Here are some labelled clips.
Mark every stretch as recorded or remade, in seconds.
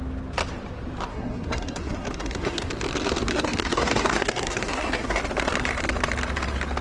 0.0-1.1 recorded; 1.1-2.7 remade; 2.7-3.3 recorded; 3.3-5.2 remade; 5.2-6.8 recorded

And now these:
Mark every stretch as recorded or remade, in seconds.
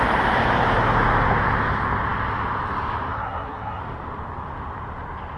0.0-3.1 recorded; 3.1-3.8 remade; 3.8-5.4 recorded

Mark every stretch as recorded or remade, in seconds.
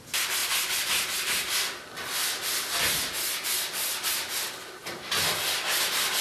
0.0-6.2 recorded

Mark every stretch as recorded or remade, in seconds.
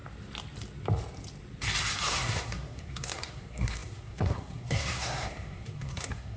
0.0-2.1 recorded; 2.1-6.4 remade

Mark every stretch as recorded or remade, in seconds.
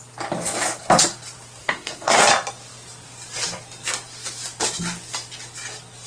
0.0-1.6 recorded; 1.6-2.2 remade; 2.2-6.1 recorded